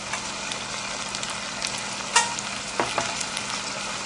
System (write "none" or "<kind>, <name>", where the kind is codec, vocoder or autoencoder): none